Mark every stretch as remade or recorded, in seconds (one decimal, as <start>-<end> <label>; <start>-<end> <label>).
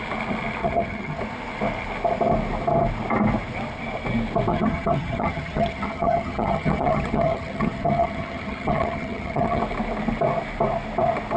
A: 0.0-0.6 recorded; 0.6-1.2 remade; 1.2-4.5 recorded; 4.5-9.6 remade; 9.6-11.4 recorded